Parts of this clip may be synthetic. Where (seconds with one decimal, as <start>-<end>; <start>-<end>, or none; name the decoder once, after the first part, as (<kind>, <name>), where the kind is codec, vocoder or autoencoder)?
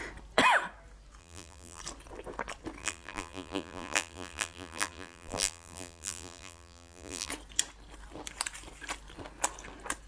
1.2-1.8 (vocoder, BigVGAN v2); 2.8-7.3